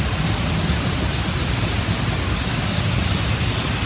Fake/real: real